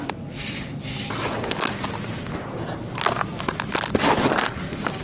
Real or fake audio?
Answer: real